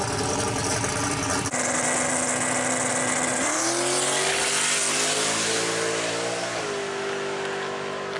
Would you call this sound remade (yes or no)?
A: no